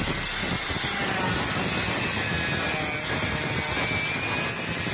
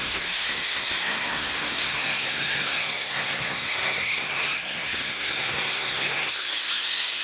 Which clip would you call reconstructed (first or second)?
second